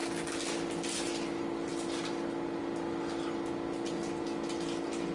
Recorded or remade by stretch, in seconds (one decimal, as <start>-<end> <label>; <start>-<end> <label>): 0.0-5.1 recorded